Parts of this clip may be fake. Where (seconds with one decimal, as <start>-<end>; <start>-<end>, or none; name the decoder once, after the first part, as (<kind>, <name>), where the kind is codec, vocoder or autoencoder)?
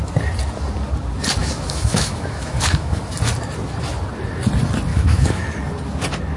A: 1.4-3.0 (autoencoder, DAC-VAE); 4.9-5.4